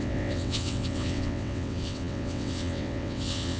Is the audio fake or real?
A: fake